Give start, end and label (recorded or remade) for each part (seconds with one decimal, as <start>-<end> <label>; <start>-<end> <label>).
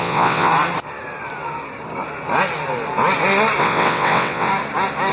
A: 0.0-0.5 remade; 0.5-3.6 recorded; 3.6-4.5 remade; 4.5-5.1 recorded